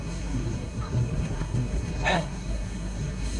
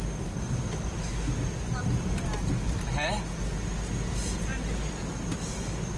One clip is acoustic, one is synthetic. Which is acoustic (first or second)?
second